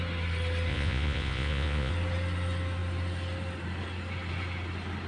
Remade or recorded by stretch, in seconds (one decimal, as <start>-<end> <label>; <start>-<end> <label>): 0.0-0.7 recorded; 0.7-1.9 remade; 1.9-5.1 recorded